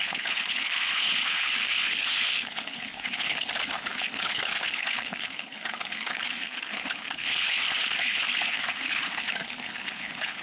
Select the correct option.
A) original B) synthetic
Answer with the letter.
B